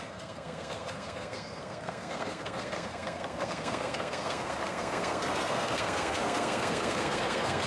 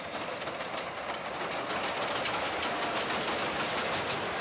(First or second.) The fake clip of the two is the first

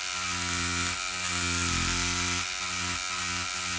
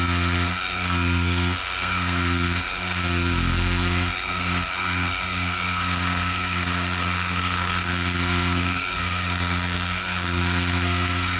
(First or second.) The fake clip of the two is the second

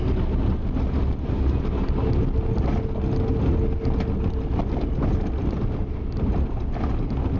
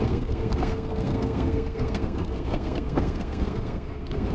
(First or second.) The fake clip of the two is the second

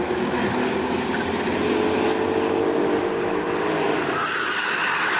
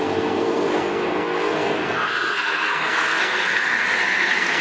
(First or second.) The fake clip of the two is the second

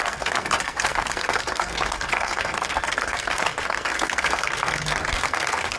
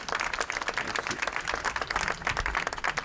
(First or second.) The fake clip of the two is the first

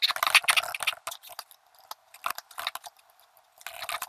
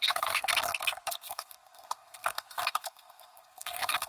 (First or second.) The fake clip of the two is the second